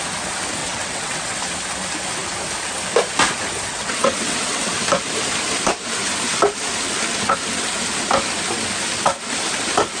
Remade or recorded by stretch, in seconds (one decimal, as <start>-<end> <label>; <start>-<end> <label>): 0.0-0.6 recorded; 0.6-1.4 remade; 1.4-3.7 recorded; 3.7-4.7 remade; 4.7-10.0 recorded